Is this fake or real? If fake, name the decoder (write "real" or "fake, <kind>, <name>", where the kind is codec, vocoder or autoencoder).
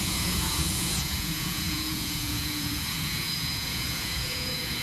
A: fake, vocoder, Vocos